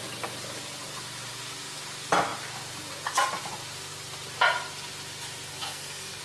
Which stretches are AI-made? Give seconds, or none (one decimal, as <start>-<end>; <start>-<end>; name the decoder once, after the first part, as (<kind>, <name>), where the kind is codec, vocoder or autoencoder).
5.5-6.2 (codec, SNAC)